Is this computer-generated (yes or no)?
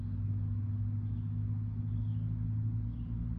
no